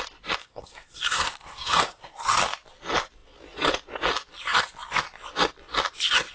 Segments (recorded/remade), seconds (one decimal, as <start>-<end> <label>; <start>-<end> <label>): 0.0-0.4 recorded; 0.4-2.2 remade; 2.2-6.3 recorded